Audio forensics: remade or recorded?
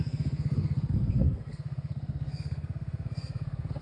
remade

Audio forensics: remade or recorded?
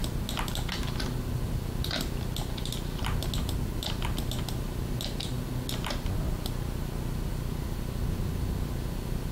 recorded